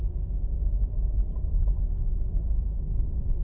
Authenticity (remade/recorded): recorded